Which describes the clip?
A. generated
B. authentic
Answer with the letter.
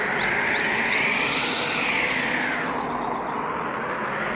B